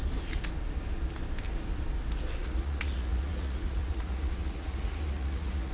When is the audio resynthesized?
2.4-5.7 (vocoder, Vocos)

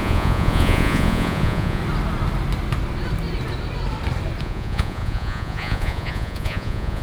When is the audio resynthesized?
0.0-1.8 (vocoder, Vocos); 4.4-7.0

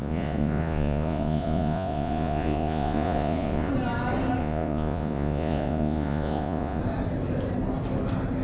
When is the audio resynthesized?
0.0-3.7 (vocoder, Vocos); 4.4-6.8